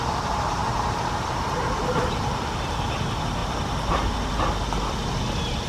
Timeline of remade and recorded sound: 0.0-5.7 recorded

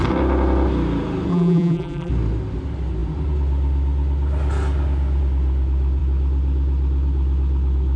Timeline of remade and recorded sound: 0.0-1.3 recorded; 1.3-2.1 remade; 2.1-8.0 recorded

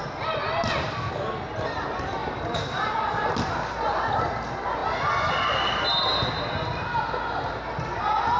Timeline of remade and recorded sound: 0.0-2.2 recorded; 2.2-2.9 remade; 2.9-8.4 recorded